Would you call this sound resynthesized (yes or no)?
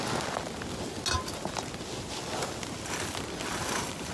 no